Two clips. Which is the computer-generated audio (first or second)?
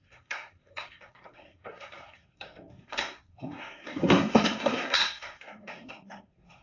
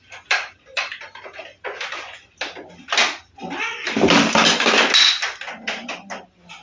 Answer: first